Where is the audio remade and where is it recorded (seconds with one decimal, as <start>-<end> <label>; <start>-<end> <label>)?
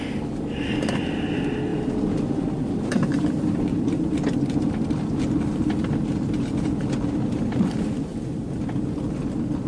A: 0.0-1.7 recorded; 1.7-4.5 remade; 4.5-9.7 recorded